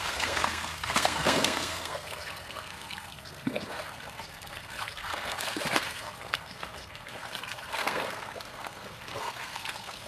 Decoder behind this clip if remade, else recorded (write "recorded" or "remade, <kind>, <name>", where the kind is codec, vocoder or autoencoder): remade, codec, SNAC